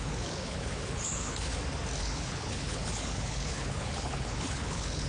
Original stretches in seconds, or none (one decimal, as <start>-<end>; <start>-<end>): 1.5-2.0